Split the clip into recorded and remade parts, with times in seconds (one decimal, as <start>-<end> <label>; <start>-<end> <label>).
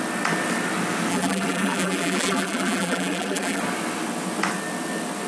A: 0.0-1.1 recorded; 1.1-3.6 remade; 3.6-5.3 recorded